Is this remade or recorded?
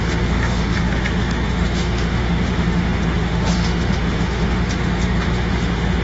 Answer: remade